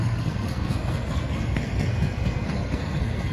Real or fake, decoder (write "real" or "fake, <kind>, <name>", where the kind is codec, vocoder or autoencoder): fake, codec, SNAC